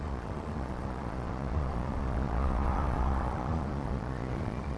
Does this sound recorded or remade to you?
remade